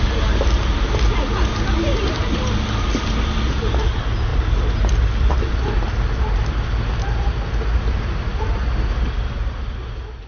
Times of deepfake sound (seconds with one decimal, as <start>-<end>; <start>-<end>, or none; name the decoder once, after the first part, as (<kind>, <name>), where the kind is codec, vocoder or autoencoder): none